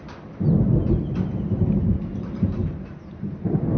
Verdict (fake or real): real